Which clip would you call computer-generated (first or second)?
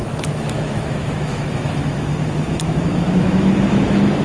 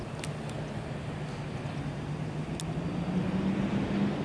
first